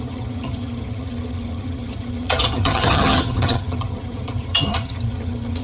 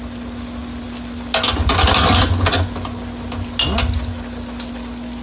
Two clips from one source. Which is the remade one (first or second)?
first